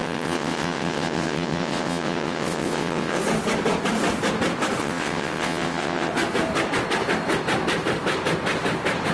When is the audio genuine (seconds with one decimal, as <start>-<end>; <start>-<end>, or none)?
3.2-4.8; 6.1-9.1